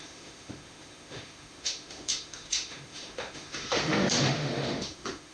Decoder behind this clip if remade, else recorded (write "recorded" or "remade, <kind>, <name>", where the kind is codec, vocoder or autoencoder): remade, autoencoder, DAC-VAE